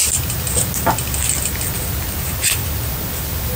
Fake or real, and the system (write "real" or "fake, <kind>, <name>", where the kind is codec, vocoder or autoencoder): real